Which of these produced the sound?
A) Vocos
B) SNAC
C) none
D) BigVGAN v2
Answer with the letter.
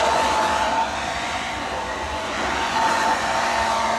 A